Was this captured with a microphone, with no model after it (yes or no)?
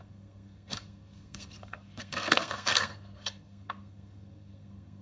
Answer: no